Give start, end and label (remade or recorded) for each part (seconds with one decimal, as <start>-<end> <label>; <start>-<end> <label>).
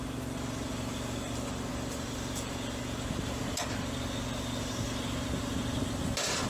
0.0-1.7 recorded; 1.7-2.8 remade; 2.8-6.5 recorded